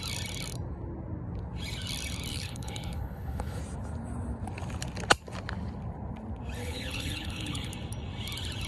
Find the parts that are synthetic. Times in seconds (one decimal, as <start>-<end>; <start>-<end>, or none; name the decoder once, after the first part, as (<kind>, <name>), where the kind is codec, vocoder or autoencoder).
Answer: 2.3-3.6 (codec, HILCodec); 6.6-7.7